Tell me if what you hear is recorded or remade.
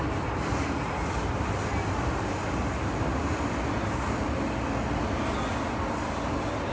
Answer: recorded